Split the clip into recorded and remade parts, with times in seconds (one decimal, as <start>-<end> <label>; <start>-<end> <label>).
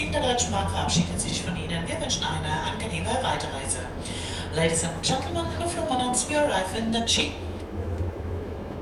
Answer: 0.0-1.3 remade; 1.3-2.1 recorded; 2.1-4.3 remade; 4.3-5.2 recorded; 5.2-8.8 remade